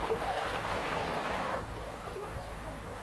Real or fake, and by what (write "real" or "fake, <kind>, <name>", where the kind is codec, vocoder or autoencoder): fake, codec, DAC